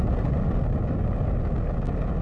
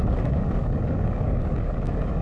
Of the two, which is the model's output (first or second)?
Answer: second